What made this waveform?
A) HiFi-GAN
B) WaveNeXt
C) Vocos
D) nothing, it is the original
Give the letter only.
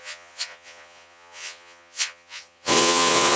C